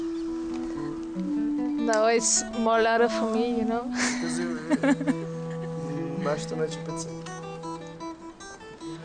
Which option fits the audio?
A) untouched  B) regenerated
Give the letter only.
A